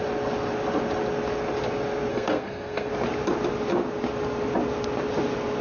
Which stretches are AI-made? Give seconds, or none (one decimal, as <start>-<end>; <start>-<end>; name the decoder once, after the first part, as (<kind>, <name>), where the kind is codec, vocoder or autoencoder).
2.1-2.9 (codec, SNAC)